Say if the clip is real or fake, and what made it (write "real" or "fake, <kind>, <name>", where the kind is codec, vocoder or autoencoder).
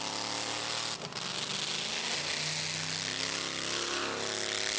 real